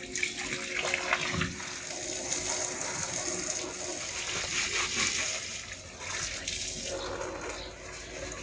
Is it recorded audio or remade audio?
recorded